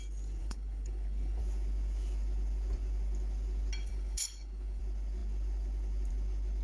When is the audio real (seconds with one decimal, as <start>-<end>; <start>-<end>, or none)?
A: 0.0-0.4; 1.4-3.9; 4.8-6.6

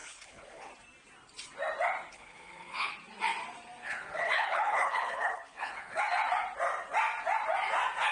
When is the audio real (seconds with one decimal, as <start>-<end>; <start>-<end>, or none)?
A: 0.7-2.1; 2.9-3.8; 6.0-8.1

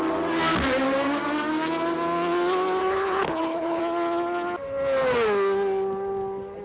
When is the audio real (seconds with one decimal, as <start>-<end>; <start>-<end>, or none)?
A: 0.0-2.8; 3.8-6.6

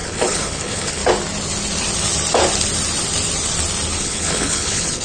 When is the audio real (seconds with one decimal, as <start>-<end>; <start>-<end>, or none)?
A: 1.0-4.0

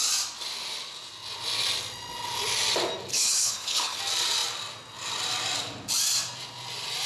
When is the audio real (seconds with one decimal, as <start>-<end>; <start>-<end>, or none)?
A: 0.0-3.1; 4.0-7.1

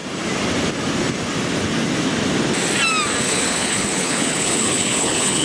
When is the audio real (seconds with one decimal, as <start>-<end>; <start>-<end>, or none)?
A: 0.0-3.2

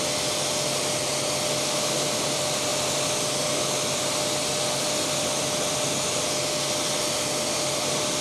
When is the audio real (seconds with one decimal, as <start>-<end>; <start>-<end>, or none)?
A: 0.0-8.2